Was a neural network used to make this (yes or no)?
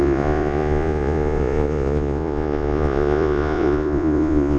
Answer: yes